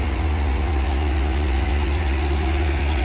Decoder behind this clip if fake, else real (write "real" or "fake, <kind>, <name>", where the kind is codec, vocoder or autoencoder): fake, vocoder, Vocos